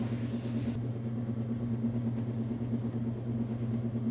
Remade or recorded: recorded